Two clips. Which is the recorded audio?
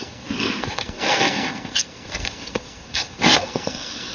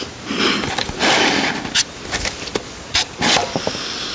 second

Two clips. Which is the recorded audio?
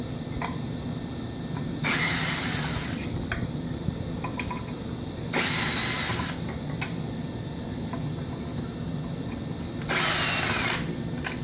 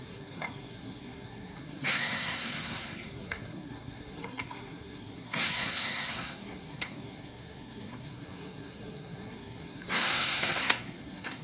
first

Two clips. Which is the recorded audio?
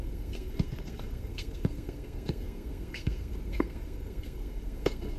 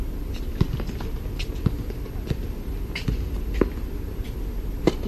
second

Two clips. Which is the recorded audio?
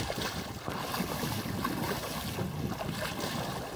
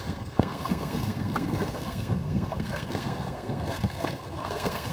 first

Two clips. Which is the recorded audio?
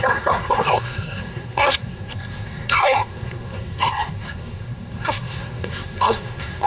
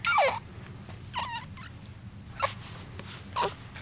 second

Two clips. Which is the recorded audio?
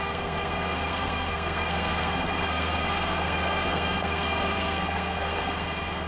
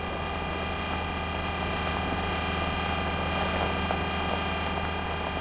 second